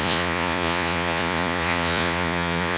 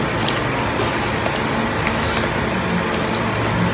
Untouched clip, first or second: second